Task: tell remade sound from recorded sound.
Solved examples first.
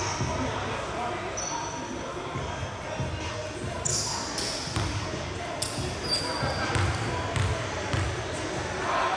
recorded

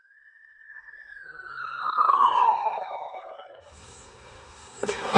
remade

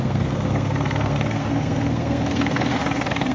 remade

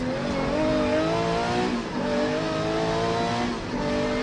recorded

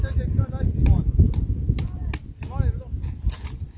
recorded